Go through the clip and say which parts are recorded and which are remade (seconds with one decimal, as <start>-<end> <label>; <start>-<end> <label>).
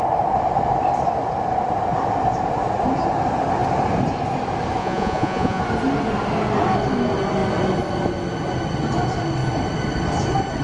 0.0-4.8 recorded; 4.8-5.6 remade; 5.6-10.6 recorded